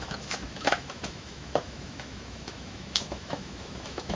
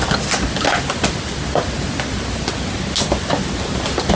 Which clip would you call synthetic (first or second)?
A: first